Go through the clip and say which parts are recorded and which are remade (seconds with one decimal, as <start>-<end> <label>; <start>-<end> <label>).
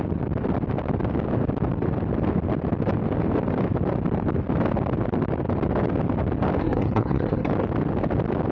0.0-6.6 recorded; 6.6-7.5 remade; 7.5-8.5 recorded